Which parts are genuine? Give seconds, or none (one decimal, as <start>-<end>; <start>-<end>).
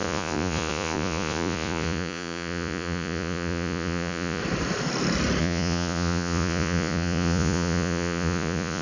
4.4-5.4